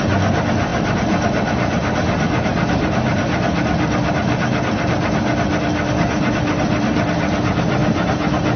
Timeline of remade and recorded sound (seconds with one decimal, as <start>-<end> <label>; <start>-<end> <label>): 0.0-8.6 recorded